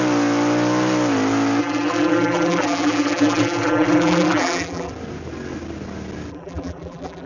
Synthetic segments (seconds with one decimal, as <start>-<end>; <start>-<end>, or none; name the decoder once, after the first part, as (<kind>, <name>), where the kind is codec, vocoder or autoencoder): 1.6-4.9 (vocoder, BigVGAN v2); 6.3-7.3